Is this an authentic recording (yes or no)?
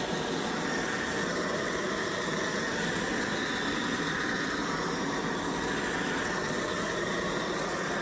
yes